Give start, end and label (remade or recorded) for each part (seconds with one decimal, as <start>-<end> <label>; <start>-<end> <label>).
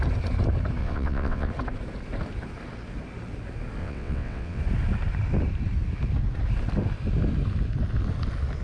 0.0-0.8 recorded; 0.8-1.5 remade; 1.5-3.8 recorded; 3.8-4.6 remade; 4.6-8.6 recorded